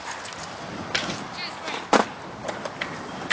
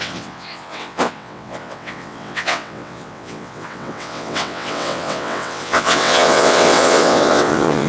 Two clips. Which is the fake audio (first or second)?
second